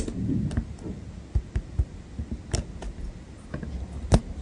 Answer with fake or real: real